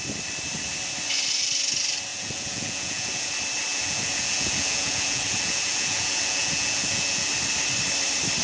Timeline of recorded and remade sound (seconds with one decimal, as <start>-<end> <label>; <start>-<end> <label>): 0.0-2.1 recorded; 2.1-3.3 remade; 3.3-3.7 recorded; 3.7-7.3 remade; 7.3-8.4 recorded